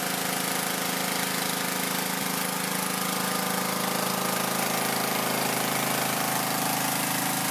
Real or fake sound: real